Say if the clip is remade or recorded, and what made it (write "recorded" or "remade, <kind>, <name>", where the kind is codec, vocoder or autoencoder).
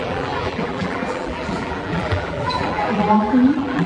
remade, vocoder, BigVGAN v2